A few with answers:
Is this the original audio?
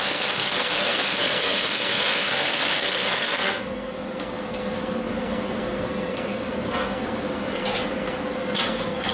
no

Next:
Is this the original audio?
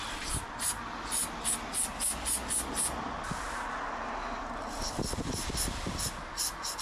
yes